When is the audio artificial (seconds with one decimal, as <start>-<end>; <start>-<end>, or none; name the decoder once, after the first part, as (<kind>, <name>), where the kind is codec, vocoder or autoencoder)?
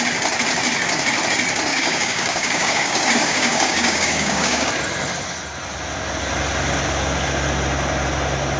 1.7-4.7 (codec, DAC)